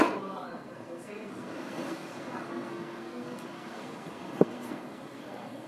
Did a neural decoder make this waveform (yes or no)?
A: yes